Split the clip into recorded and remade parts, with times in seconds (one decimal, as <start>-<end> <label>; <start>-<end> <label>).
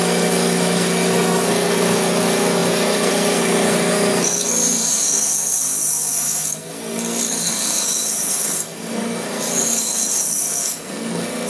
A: 0.0-11.5 remade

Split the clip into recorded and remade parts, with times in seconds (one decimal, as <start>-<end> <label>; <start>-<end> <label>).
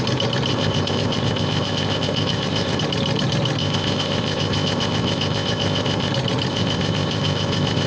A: 0.0-0.5 recorded; 0.5-2.8 remade; 2.8-3.6 recorded; 3.6-6.1 remade; 6.1-6.5 recorded; 6.5-7.9 remade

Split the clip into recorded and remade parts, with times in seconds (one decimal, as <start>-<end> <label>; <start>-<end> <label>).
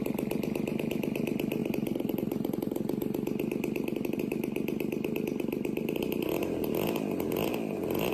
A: 0.0-8.1 recorded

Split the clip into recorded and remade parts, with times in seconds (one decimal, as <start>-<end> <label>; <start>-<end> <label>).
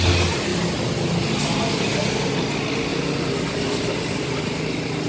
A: 0.0-5.1 recorded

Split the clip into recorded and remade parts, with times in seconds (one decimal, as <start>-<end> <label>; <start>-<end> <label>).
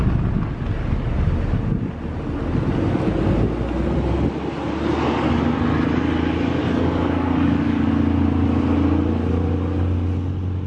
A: 0.0-6.6 recorded; 6.6-7.9 remade; 7.9-10.7 recorded